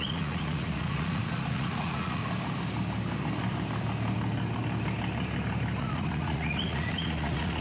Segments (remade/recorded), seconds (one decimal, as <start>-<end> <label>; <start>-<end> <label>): 0.0-2.2 remade; 2.2-5.8 recorded; 5.8-7.6 remade